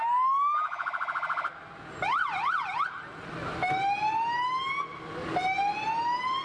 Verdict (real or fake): real